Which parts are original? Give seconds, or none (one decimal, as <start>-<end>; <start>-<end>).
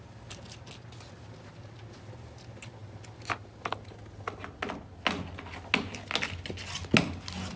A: 0.0-7.6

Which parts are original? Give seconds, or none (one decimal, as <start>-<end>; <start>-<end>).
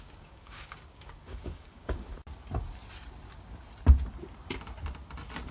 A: 2.1-5.5